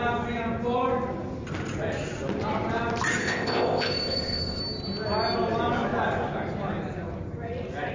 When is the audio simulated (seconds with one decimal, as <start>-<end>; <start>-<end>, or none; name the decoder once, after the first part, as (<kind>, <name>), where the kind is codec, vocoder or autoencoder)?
3.2-4.6 (codec, ZipCodec)